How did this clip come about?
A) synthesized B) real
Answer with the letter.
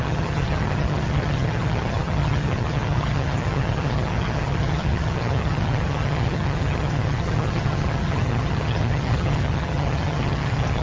A